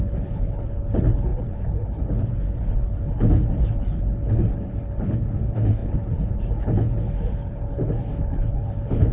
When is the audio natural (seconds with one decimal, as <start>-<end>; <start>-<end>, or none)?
none